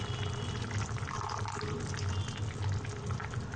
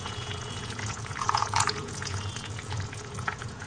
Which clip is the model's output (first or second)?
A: second